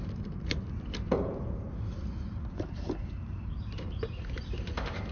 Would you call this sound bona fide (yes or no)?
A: no